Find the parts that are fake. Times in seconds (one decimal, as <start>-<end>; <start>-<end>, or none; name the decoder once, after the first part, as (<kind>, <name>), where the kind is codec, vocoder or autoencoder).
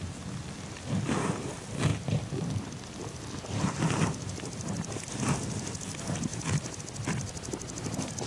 none